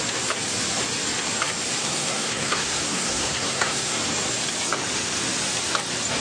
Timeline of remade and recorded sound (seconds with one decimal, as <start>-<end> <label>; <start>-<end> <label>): 0.0-1.8 recorded; 1.8-4.0 remade; 4.0-6.2 recorded